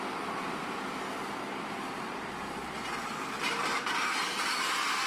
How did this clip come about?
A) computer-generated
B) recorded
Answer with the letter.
A